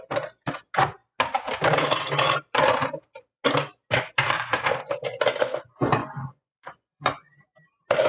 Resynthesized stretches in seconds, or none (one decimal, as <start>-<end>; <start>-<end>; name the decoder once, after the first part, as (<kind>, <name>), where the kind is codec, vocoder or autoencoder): 6.0-7.4 (vocoder, Vocos)